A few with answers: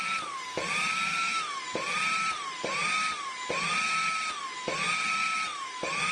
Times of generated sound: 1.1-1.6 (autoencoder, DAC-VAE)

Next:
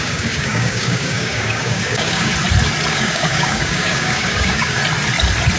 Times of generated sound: 0.0-2.3 (codec, DAC); 2.9-4.8

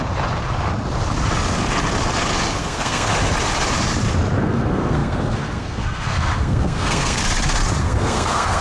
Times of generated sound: 2.6-3.1 (codec, SNAC); 4.4-7.2; 7.8-8.6